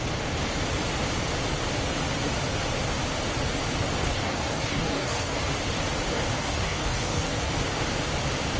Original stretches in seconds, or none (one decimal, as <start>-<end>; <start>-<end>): 0.0-4.0; 5.4-6.1; 7.5-8.6